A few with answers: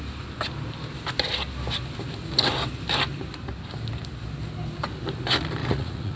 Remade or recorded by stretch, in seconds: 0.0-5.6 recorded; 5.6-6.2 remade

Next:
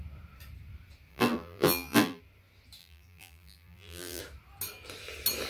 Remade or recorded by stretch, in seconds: 0.0-1.1 recorded; 1.1-2.2 remade; 2.2-2.8 recorded; 2.8-4.2 remade; 4.2-5.5 recorded

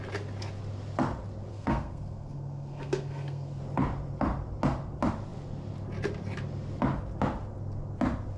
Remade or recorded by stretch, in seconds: 0.0-1.5 recorded; 1.5-3.6 remade; 3.6-8.4 recorded

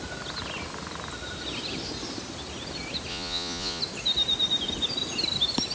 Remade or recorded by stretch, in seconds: 0.0-3.1 recorded; 3.1-3.8 remade; 3.8-5.7 recorded

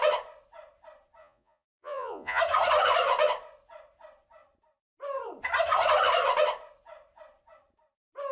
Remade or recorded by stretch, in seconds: 0.0-1.2 recorded; 1.2-2.4 remade; 2.4-8.3 recorded

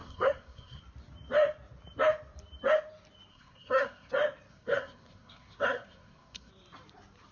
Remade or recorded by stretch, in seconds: 0.0-0.8 remade; 0.8-3.3 recorded; 3.3-4.1 remade; 4.1-4.5 recorded; 4.5-6.5 remade; 6.5-7.3 recorded

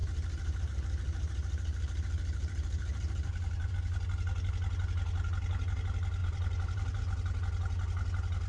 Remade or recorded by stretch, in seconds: 0.0-3.7 remade; 3.7-6.2 recorded; 6.2-7.0 remade; 7.0-8.5 recorded

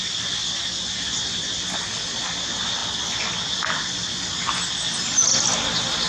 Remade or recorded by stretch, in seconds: 0.0-6.1 recorded